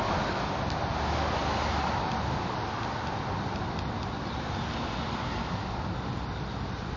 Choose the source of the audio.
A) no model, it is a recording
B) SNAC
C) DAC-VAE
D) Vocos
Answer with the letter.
A